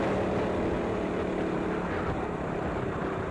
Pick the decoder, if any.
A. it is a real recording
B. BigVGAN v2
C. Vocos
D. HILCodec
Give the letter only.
A